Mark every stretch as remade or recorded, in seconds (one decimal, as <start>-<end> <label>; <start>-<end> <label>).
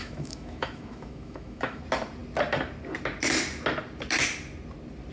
0.0-1.8 remade; 1.8-5.1 recorded